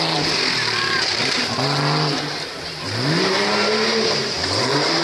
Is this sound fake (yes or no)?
yes